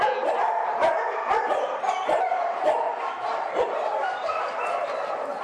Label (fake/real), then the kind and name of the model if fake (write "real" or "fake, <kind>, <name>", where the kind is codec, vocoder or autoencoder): real